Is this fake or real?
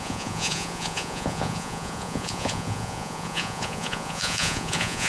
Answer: fake